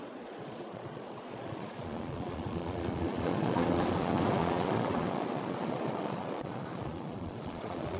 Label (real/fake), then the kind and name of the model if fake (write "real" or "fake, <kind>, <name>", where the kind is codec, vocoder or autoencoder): fake, vocoder, Vocos